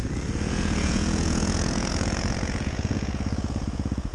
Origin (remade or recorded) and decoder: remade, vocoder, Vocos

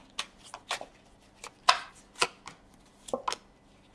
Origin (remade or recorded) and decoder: recorded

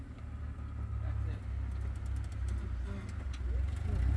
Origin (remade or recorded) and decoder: recorded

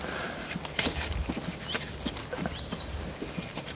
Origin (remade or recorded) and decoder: recorded